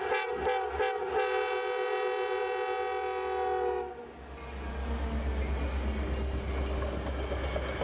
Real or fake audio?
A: real